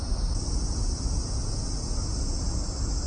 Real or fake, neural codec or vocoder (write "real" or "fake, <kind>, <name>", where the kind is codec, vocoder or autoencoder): real